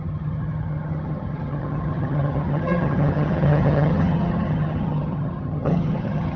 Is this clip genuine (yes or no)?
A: no